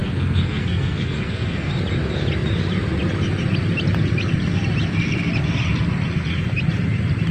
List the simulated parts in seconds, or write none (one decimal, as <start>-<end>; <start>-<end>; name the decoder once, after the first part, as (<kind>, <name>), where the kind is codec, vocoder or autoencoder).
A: 0.0-1.7 (codec, SNAC)